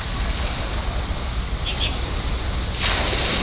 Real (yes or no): yes